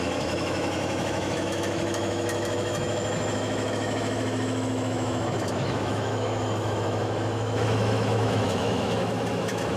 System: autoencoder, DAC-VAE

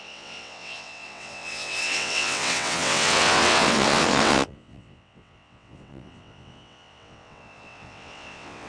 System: vocoder, WaveNeXt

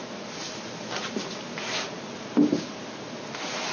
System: none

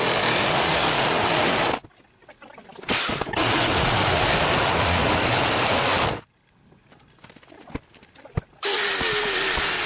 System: none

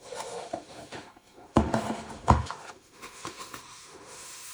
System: autoencoder, DAC-VAE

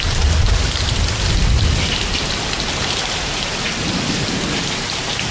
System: none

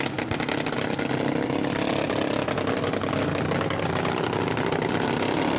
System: none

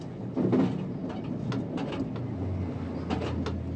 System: none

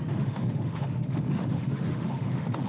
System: autoencoder, DAC-VAE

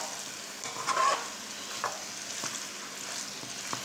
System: none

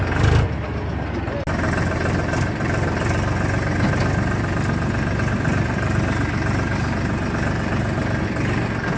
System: none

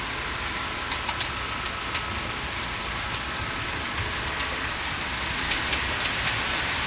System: none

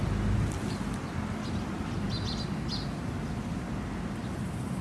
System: none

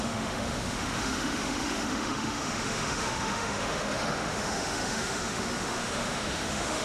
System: autoencoder, DAC-VAE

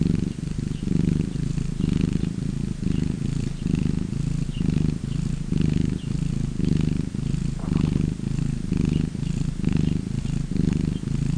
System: none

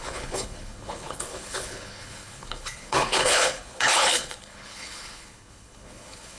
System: codec, HILCodec